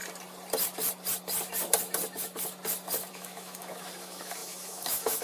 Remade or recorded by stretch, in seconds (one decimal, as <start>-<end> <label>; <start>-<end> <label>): 0.0-3.1 recorded; 3.1-5.2 remade